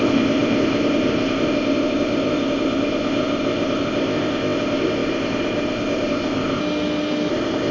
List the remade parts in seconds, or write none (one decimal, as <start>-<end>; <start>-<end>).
0.0-6.6; 7.3-7.7